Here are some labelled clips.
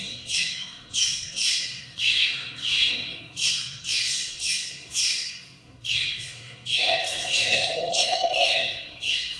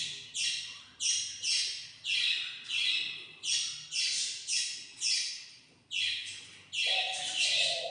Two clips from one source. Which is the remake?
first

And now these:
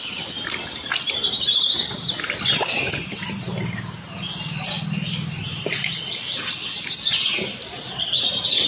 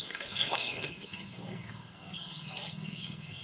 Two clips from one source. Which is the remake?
second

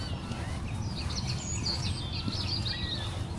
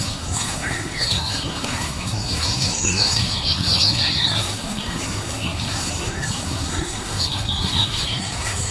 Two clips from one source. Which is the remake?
second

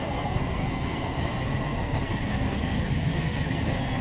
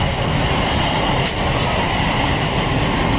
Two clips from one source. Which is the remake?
first